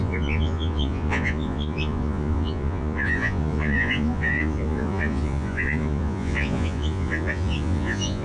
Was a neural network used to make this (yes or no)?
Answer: yes